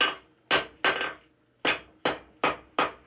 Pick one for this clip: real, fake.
real